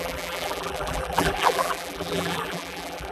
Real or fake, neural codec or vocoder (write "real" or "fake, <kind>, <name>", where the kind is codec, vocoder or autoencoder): fake, vocoder, BigVGAN v2